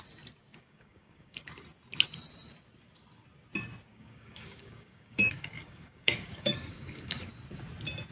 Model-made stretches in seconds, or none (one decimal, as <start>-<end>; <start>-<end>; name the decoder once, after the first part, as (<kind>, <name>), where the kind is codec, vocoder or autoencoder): 0.5-1.5 (codec, DAC); 3.9-7.3